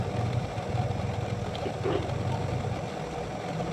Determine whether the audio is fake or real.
fake